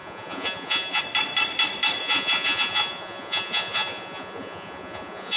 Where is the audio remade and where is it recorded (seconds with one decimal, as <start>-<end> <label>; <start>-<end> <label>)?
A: 0.0-1.0 remade; 1.0-2.0 recorded; 2.0-5.4 remade